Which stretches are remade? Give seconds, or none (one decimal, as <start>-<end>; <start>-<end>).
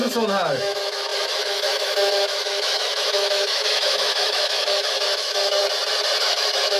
0.6-5.6; 6.2-6.8